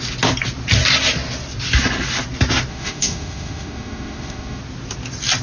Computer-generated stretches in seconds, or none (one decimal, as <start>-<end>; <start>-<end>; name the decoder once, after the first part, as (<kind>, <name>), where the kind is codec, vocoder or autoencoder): 2.7-4.6 (autoencoder, DAC-VAE)